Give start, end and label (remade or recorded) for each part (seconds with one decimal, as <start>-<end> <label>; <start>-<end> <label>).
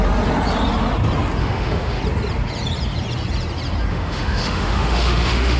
0.0-1.4 recorded; 1.4-2.0 remade; 2.0-3.9 recorded; 3.9-5.6 remade